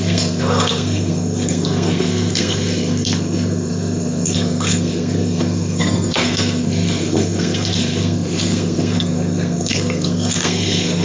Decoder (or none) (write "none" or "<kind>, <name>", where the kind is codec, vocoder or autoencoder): codec, SNAC